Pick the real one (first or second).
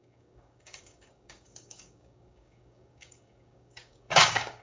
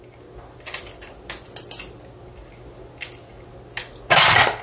second